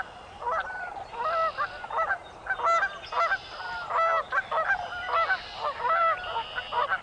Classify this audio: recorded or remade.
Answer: recorded